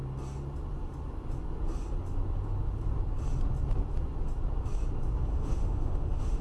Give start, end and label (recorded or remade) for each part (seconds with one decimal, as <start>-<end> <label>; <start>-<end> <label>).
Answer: 0.0-5.3 recorded; 5.3-6.4 remade

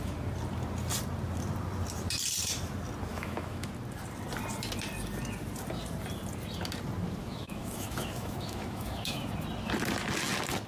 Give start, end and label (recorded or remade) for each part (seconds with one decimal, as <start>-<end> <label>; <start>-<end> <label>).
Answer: 0.0-3.1 recorded; 3.1-3.7 remade; 3.7-7.2 recorded; 7.2-9.3 remade; 9.3-10.7 recorded

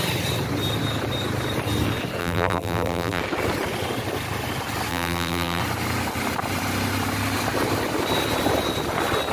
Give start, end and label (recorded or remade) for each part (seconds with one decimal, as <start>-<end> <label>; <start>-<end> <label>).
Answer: 0.0-2.2 recorded; 2.2-3.2 remade; 3.2-4.9 recorded; 4.9-5.6 remade; 5.6-9.3 recorded

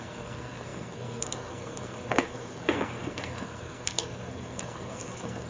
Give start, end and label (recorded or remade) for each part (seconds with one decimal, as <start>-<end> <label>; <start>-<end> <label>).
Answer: 0.0-5.5 remade

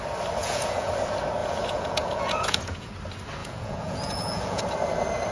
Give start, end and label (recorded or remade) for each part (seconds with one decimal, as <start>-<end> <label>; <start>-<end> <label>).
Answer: 0.0-0.4 recorded; 0.4-0.9 remade; 0.9-1.4 recorded; 1.4-2.9 remade; 2.9-3.4 recorded; 3.4-4.6 remade; 4.6-5.3 recorded